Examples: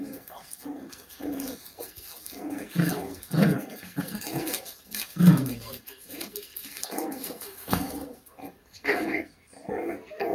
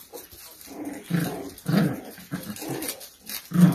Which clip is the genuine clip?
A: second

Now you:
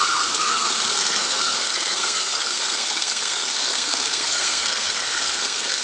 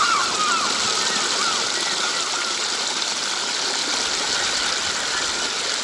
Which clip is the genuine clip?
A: second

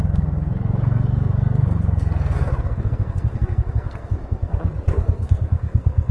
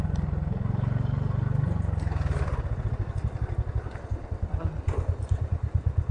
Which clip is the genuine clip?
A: second